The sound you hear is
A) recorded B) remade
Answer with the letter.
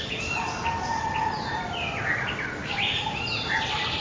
A